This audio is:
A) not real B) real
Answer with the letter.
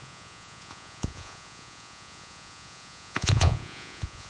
A